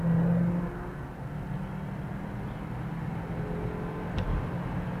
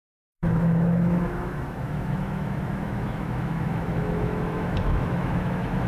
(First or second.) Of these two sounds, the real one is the first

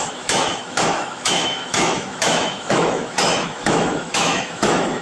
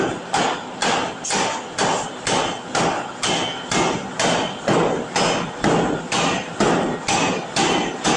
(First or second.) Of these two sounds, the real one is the second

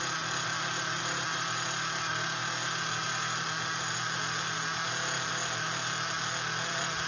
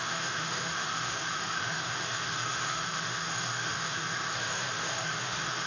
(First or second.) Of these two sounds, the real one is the first